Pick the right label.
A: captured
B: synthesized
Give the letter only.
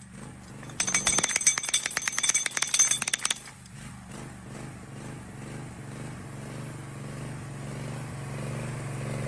A